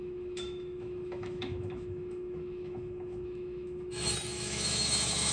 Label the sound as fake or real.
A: fake